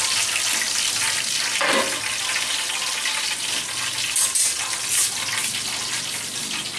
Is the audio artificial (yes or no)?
no